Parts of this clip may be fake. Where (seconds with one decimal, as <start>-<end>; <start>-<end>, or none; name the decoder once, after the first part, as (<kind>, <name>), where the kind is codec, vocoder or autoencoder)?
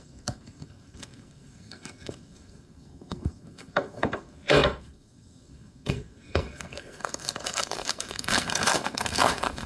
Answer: 0.0-9.7 (codec, SNAC)